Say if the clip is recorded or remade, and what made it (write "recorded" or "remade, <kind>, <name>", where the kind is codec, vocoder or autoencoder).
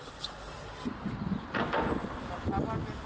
recorded